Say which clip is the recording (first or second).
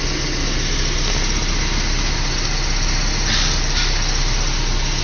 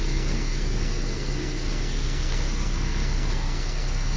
first